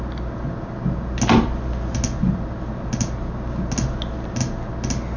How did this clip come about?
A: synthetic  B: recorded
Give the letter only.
B